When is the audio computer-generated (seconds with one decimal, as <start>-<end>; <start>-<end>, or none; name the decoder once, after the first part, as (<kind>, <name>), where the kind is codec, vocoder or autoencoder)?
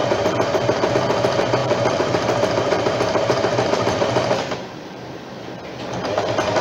0.0-0.9 (vocoder, BigVGAN v2); 1.6-5.6